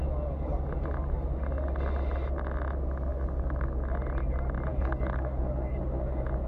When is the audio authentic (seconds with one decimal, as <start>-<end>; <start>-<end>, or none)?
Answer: 0.0-3.1; 3.9-4.7; 5.8-6.5